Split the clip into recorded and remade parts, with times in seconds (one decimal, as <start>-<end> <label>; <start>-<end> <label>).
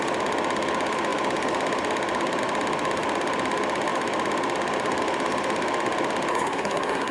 0.0-6.3 recorded; 6.3-7.1 remade